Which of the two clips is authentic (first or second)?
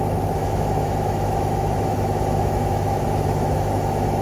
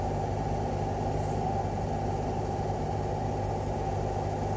second